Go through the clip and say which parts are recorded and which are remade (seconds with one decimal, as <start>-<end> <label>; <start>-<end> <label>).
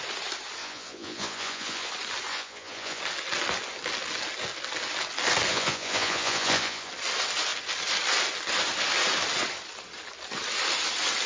0.0-0.6 recorded; 0.6-1.9 remade; 1.9-2.3 recorded; 2.3-3.0 remade; 3.0-5.5 recorded; 5.5-6.9 remade; 6.9-11.3 recorded